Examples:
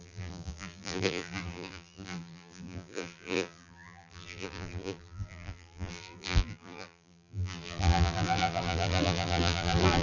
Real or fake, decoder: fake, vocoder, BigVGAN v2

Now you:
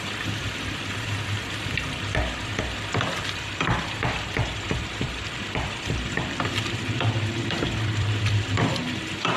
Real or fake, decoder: fake, vocoder, BigVGAN v2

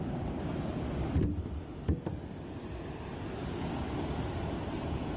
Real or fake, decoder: fake, vocoder, BigVGAN v2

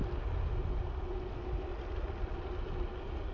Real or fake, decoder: real